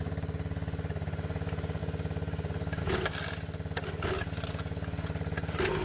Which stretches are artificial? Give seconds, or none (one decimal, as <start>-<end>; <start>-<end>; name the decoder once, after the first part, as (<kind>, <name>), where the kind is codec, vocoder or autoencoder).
none